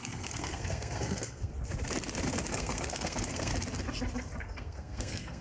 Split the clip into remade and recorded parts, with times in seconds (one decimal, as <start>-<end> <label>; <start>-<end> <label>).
0.0-1.5 remade; 1.5-2.5 recorded; 2.5-3.5 remade; 3.5-4.4 recorded; 4.4-5.4 remade